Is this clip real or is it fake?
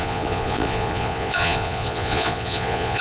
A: fake